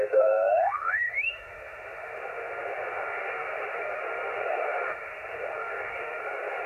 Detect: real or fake fake